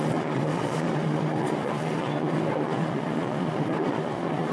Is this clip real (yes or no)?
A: no